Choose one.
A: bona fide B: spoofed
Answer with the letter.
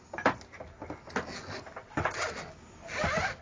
A